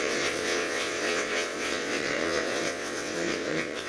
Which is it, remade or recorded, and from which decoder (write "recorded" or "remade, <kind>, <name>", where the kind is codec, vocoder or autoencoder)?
remade, vocoder, WaveNeXt